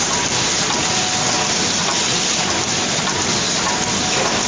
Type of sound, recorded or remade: recorded